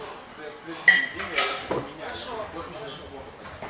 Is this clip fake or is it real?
real